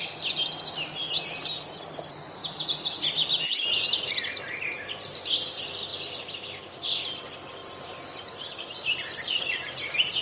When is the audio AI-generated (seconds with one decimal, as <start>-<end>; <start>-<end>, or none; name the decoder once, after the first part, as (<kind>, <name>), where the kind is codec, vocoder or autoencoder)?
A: 7.6-10.2 (vocoder, BigVGAN v2)